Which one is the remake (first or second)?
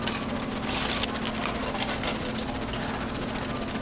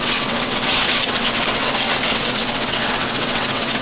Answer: second